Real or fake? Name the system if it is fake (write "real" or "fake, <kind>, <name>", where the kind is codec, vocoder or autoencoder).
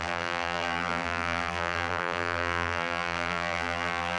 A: fake, vocoder, BigVGAN v2